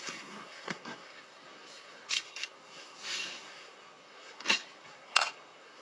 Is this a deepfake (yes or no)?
yes